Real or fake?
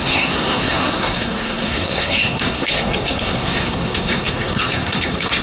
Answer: fake